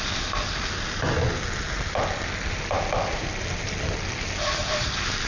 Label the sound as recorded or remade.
recorded